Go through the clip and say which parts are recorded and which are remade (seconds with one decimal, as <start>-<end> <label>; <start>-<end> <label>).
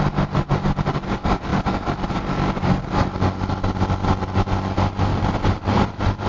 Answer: 0.0-5.1 recorded; 5.1-6.3 remade